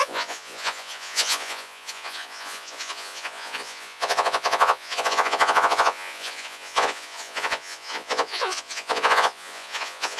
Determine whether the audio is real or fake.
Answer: fake